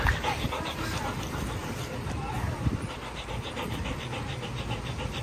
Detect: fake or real real